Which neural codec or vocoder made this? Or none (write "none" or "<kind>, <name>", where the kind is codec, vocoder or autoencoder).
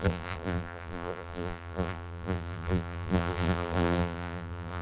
vocoder, BigVGAN v2